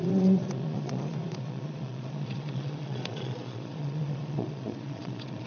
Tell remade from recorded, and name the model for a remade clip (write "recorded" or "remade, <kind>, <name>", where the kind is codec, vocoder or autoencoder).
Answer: remade, vocoder, Vocos